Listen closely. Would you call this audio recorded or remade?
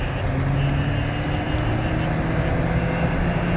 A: recorded